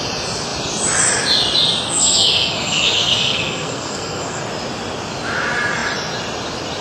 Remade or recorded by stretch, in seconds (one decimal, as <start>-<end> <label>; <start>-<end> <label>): 0.0-1.9 recorded; 1.9-4.4 remade; 4.4-6.8 recorded